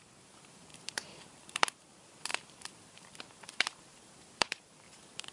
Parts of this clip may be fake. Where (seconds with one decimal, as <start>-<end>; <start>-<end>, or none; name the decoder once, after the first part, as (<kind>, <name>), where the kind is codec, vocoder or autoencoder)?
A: 0.0-5.3 (vocoder, BigVGAN v2)